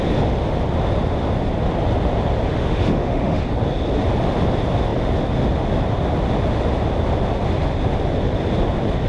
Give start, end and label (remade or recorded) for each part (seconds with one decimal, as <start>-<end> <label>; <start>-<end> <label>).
0.0-2.5 recorded; 2.5-3.4 remade; 3.4-9.1 recorded